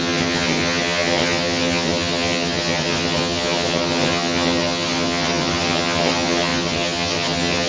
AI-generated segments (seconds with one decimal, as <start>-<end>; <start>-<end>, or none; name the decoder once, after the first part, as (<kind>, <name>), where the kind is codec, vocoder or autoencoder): 0.0-7.7 (vocoder, HiFi-GAN)